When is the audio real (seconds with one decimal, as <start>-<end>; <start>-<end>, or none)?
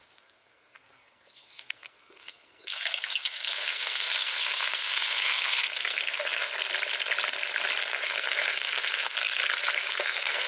6.5-7.8; 9.4-9.9